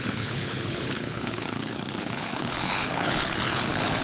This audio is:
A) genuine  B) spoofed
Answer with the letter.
B